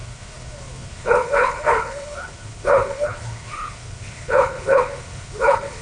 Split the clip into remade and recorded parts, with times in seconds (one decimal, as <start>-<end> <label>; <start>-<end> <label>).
0.0-5.8 remade